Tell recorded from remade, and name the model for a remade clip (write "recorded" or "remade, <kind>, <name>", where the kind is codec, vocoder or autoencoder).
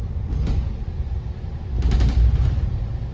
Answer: recorded